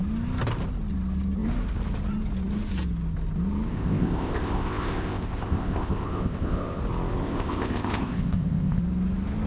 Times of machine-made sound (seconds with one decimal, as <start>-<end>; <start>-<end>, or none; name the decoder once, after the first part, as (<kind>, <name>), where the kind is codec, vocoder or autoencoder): 3.7-6.8 (codec, ZipCodec); 7.2-8.8